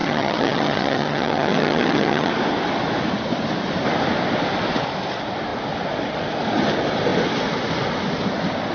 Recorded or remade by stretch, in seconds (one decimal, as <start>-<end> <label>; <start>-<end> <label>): 0.0-2.3 remade; 2.3-8.7 recorded